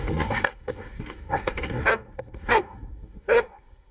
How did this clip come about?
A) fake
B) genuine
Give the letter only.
A